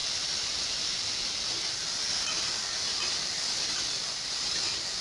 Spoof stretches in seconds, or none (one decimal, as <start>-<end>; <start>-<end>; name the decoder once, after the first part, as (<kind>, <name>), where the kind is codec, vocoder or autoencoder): 0.0-1.4 (vocoder, BigVGAN v2); 1.8-3.3